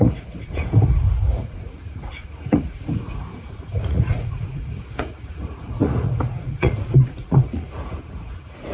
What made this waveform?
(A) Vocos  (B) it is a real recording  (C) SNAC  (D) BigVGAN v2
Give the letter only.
A